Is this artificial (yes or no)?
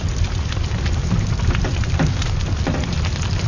yes